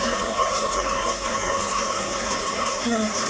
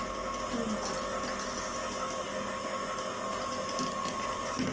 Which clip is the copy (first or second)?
first